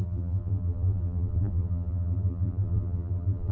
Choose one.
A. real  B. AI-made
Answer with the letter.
B